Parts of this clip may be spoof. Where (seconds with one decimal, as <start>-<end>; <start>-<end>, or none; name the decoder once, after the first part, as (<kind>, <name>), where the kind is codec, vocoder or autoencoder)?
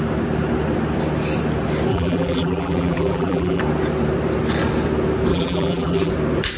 1.9-3.6 (vocoder, BigVGAN v2); 5.3-6.1